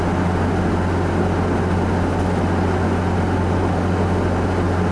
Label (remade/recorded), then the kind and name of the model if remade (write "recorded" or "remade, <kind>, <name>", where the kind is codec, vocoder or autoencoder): recorded